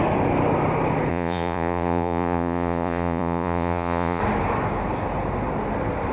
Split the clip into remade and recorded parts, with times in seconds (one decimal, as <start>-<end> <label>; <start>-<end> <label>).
0.0-1.1 recorded; 1.1-4.2 remade; 4.2-6.1 recorded